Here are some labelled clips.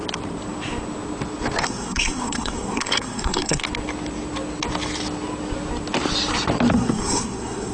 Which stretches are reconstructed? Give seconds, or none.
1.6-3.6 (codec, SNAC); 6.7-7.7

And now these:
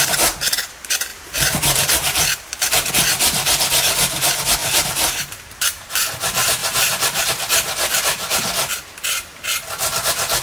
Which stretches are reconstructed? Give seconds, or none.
1.1-2.9 (vocoder, BigVGAN v2); 4.6-5.9; 6.6-7.3

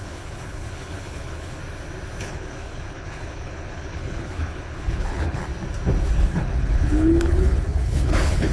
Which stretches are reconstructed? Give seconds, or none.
0.0-1.6 (codec, HILCodec); 2.2-5.4; 6.2-8.5